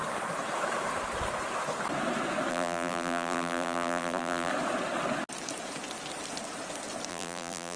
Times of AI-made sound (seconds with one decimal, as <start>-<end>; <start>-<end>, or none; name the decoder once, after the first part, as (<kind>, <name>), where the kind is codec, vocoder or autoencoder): 2.5-4.5 (vocoder, BigVGAN v2); 7.1-7.8